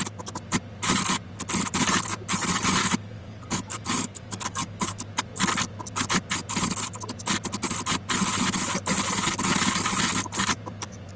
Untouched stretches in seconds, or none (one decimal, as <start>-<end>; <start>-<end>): 0.0-2.8; 5.1-11.2